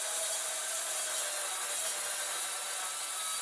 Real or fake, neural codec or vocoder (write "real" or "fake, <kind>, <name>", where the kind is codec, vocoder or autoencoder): real